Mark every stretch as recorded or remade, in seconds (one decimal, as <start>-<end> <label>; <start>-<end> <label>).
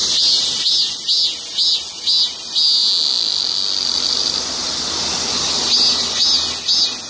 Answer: 0.0-7.1 recorded